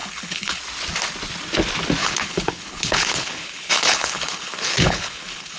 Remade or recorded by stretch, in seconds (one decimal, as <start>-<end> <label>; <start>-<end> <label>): 0.0-0.6 remade; 0.6-2.0 recorded; 2.0-5.6 remade